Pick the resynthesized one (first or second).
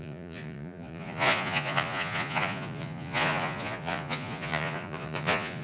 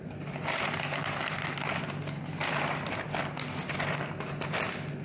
first